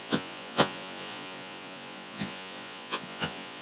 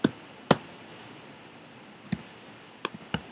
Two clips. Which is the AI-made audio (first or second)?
first